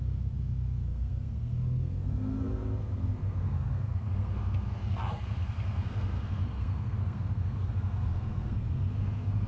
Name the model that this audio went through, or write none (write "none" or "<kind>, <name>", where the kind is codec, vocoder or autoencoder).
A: codec, SNAC